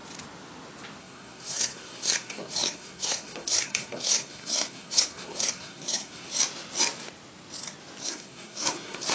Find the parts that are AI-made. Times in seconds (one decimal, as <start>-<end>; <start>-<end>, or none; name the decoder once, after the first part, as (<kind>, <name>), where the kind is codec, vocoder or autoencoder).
1.0-6.3 (codec, SNAC); 8.0-9.1